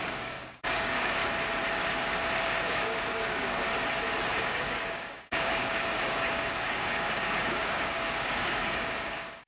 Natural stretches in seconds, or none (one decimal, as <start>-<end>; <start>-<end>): 1.2-2.4; 3.7-4.4